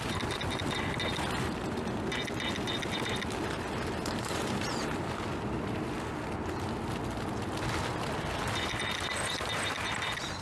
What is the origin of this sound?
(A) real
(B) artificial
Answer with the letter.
A